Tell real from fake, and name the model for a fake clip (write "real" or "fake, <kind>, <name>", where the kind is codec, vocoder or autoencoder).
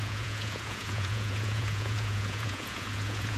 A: fake, vocoder, Vocos